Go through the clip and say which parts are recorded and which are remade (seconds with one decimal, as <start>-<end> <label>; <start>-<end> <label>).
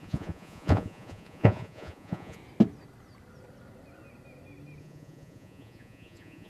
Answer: 0.0-2.4 remade; 2.4-4.8 recorded; 4.8-6.5 remade